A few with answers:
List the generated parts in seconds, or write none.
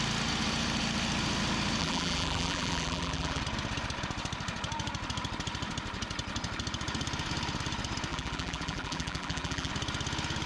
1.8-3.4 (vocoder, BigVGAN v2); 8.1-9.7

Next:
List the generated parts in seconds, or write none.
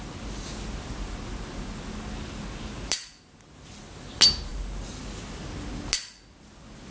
4.5-5.0 (vocoder, BigVGAN v2)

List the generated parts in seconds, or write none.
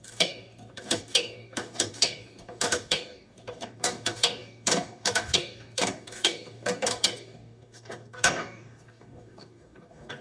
0.0-10.2 (codec, DAC)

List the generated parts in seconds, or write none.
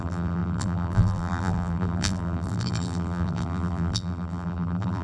0.0-5.0 (vocoder, BigVGAN v2)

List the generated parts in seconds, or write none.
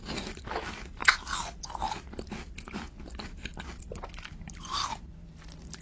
none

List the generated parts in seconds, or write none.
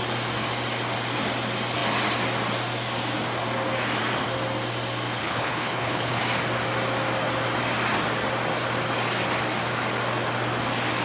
5.2-6.2 (codec, HILCodec)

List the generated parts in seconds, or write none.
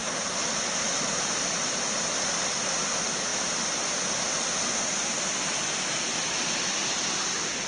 none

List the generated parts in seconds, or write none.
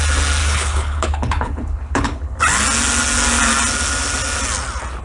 0.4-2.4 (codec, HILCodec)